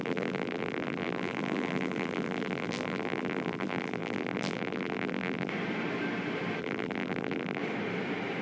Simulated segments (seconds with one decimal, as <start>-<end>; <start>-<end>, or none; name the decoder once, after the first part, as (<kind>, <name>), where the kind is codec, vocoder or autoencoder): 0.0-5.5 (vocoder, BigVGAN v2); 6.6-7.6